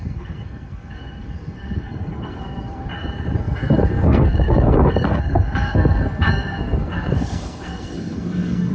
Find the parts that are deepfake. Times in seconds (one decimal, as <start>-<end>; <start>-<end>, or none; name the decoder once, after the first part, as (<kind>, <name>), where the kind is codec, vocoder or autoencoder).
0.0-2.9 (codec, SNAC); 3.4-8.7